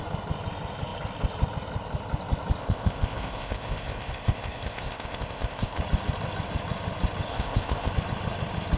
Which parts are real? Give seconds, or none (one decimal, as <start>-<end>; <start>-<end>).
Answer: 0.0-2.6; 5.8-7.3; 7.9-8.8